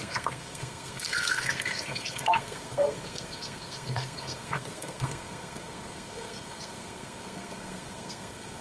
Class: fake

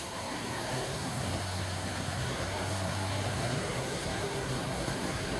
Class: fake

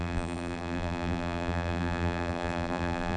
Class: fake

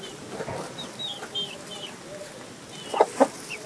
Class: real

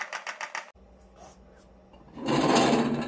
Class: real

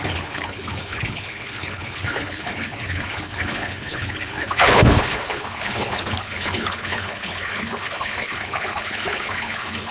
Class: fake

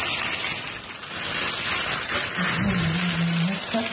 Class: real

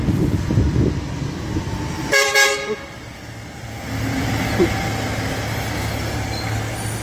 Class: real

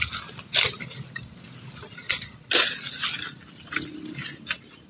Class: real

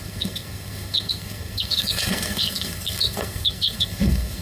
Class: fake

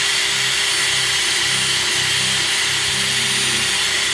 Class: real